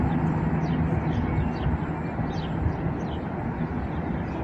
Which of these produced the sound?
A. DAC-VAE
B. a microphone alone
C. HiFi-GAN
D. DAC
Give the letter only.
B